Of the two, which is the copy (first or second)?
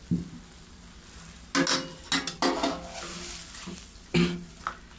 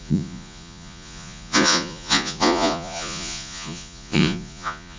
second